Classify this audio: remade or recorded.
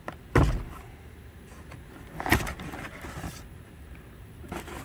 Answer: recorded